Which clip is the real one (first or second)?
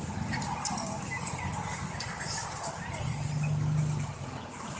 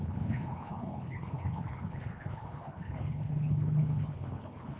first